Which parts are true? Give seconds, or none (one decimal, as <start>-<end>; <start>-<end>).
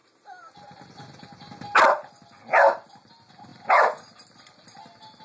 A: 0.0-5.2